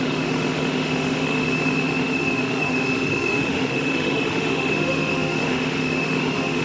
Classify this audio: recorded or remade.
remade